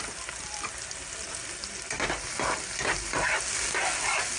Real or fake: real